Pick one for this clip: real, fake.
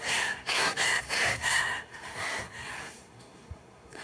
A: fake